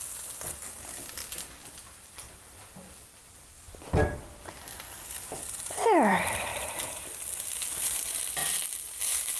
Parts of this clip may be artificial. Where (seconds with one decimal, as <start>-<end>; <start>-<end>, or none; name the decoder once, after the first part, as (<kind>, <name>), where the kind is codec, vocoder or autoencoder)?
none